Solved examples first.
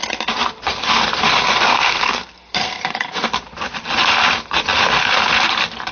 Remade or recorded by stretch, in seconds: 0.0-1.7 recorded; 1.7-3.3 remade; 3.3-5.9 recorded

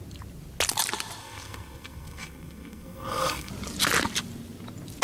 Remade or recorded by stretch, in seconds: 0.0-1.2 recorded; 1.2-3.5 remade; 3.5-5.0 recorded

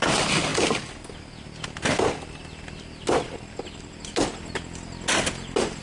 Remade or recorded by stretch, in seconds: 0.0-5.8 recorded

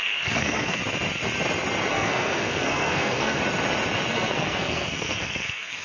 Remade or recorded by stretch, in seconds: 0.0-0.8 remade; 0.8-1.9 recorded; 1.9-3.4 remade; 3.4-4.1 recorded; 4.1-5.8 remade